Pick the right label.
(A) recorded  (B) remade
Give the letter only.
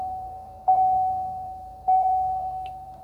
B